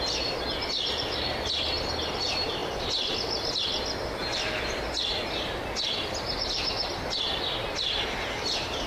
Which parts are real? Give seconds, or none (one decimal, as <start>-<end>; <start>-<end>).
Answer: 0.0-8.9